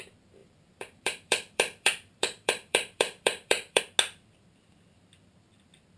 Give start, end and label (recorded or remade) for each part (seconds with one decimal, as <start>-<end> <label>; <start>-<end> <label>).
0.0-0.4 recorded; 0.4-3.8 remade; 3.8-6.0 recorded